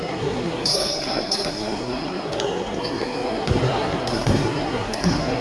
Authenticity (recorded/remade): remade